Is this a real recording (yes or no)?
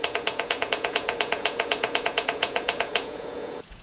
no